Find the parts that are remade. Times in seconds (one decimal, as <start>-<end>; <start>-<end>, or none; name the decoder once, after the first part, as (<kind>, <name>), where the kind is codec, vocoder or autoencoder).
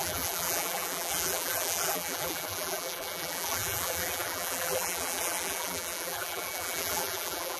0.0-7.6 (vocoder, BigVGAN v2)